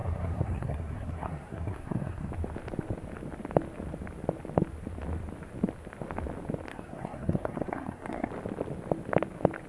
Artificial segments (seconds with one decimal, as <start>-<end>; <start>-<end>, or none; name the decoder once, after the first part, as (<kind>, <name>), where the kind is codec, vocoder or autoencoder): 0.0-2.3 (codec, SNAC); 6.7-8.3